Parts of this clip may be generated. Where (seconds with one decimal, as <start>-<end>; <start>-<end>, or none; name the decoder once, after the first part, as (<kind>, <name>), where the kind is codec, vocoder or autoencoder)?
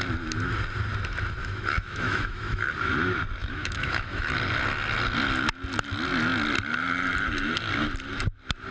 1.4-2.7 (autoencoder, DAC-VAE); 3.4-4.3